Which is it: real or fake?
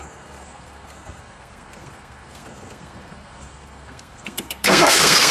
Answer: fake